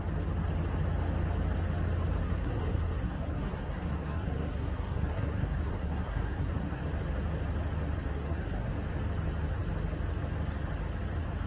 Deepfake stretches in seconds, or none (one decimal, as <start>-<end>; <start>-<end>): 2.2-6.8; 8.1-8.7